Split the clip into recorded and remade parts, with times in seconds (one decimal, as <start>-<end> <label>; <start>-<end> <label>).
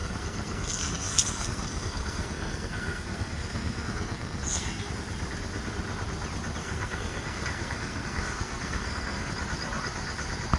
0.0-4.9 remade; 4.9-6.6 recorded; 6.6-9.3 remade; 9.3-10.6 recorded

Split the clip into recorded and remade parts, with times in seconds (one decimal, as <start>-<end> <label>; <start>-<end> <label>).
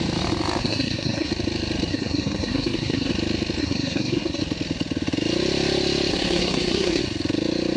0.0-0.6 recorded; 0.6-1.3 remade; 1.3-1.9 recorded; 1.9-3.1 remade; 3.1-3.6 recorded; 3.6-4.4 remade; 4.4-6.1 recorded; 6.1-7.0 remade; 7.0-7.8 recorded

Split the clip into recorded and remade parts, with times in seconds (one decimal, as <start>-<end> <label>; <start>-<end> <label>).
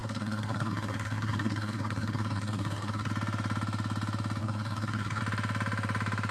0.0-3.1 remade; 3.1-4.4 recorded; 4.4-5.2 remade; 5.2-6.3 recorded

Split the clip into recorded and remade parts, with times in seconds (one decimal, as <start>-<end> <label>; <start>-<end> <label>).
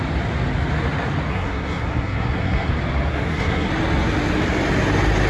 0.0-1.3 recorded; 1.3-2.7 remade; 2.7-3.1 recorded; 3.1-3.7 remade; 3.7-5.3 recorded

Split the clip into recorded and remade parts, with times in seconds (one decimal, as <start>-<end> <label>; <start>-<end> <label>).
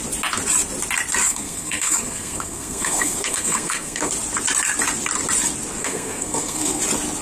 0.0-1.2 recorded; 1.2-4.1 remade; 4.1-5.8 recorded; 5.8-6.8 remade; 6.8-7.2 recorded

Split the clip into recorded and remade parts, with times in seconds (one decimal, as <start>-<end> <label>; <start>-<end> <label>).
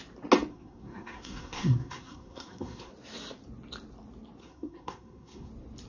0.0-0.5 recorded; 0.5-2.9 remade; 2.9-4.4 recorded; 4.4-5.5 remade; 5.5-5.9 recorded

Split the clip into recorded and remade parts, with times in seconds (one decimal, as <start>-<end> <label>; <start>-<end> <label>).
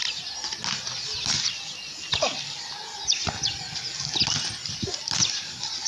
0.0-5.9 recorded